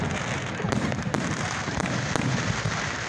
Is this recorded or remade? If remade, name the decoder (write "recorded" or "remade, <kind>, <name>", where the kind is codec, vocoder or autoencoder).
remade, vocoder, BigVGAN v2